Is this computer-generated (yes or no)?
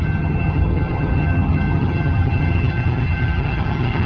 yes